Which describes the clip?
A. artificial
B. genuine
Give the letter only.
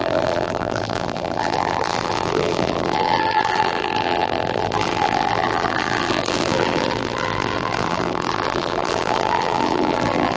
A